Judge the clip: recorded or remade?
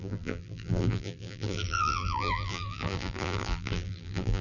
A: remade